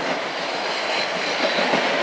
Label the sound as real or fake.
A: real